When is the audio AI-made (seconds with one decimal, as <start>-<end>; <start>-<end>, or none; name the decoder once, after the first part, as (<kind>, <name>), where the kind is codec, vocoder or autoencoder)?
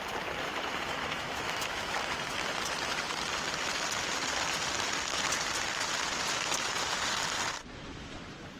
1.0-1.8 (autoencoder, DAC-VAE)